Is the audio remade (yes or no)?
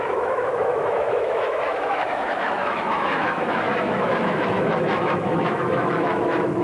yes